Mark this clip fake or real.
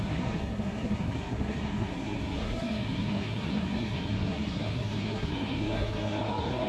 fake